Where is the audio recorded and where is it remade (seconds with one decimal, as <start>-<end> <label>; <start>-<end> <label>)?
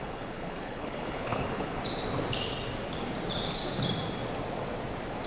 0.0-1.8 remade; 1.8-5.3 recorded